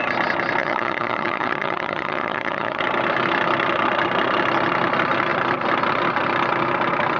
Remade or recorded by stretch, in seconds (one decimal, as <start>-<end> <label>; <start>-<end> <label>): 0.0-0.6 recorded; 0.6-2.8 remade; 2.8-7.2 recorded